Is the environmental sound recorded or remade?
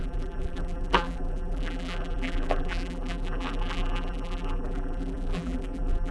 remade